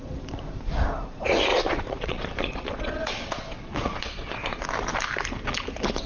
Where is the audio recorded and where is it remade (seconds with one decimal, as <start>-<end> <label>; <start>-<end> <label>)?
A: 0.0-1.5 recorded; 1.5-4.6 remade; 4.6-6.1 recorded